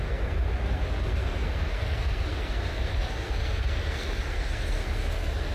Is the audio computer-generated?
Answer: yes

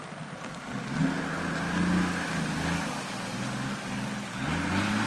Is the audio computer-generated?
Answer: no